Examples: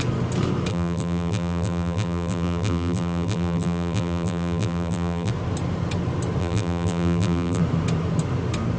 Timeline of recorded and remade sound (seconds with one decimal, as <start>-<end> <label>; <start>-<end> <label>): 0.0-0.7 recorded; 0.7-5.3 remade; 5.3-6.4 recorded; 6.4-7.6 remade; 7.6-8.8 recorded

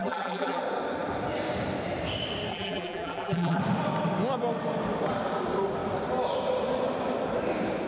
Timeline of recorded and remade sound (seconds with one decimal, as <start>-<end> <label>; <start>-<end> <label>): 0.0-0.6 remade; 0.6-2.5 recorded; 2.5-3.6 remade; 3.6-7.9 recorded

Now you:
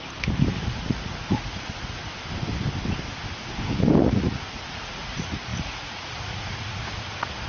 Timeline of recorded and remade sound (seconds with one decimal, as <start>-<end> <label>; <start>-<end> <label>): 0.0-0.5 recorded; 0.5-2.0 remade; 2.0-4.0 recorded; 4.0-7.5 remade